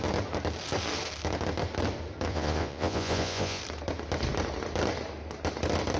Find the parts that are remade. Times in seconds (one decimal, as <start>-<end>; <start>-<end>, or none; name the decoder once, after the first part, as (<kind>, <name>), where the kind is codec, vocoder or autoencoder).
2.3-3.6 (vocoder, Vocos)